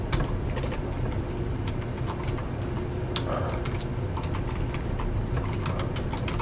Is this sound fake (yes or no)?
no